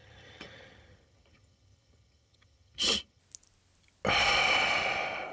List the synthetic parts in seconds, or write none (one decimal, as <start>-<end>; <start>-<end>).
0.0-3.2